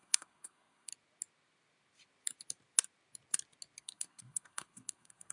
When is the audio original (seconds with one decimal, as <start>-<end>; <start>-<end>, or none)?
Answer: 0.9-3.8